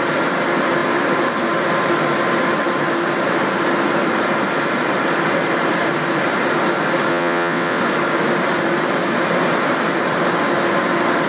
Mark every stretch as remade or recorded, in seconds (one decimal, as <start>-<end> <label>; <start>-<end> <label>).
0.0-7.1 recorded; 7.1-7.8 remade; 7.8-11.3 recorded